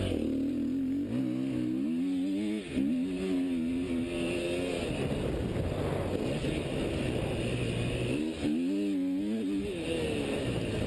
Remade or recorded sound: recorded